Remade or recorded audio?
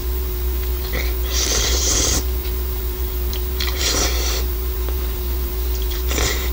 remade